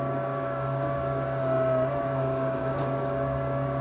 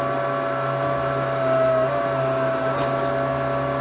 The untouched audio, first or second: second